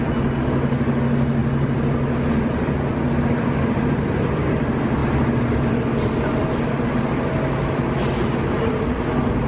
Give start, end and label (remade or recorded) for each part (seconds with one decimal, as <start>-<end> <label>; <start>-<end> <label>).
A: 0.0-9.5 recorded